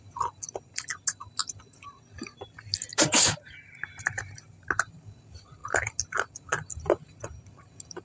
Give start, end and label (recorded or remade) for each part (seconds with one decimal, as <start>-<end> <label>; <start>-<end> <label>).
0.0-8.0 recorded